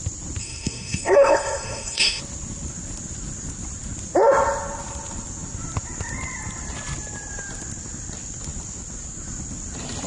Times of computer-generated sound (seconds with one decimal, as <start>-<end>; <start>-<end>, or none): 0.4-2.2